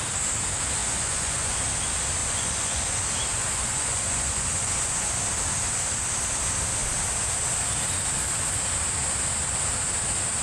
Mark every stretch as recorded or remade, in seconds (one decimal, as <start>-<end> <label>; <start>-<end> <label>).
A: 0.0-0.8 recorded; 0.8-1.6 remade; 1.6-2.2 recorded; 2.2-3.0 remade; 3.0-3.4 recorded; 3.4-5.2 remade; 5.2-10.4 recorded